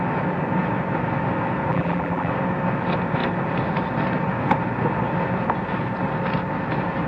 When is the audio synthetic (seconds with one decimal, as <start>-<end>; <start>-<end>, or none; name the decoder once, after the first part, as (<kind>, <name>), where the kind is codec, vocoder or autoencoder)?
1.7-2.3 (vocoder, BigVGAN v2)